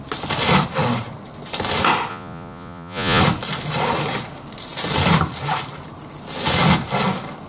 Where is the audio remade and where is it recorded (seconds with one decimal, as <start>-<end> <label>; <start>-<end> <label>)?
0.0-2.1 recorded; 2.1-3.2 remade; 3.2-7.5 recorded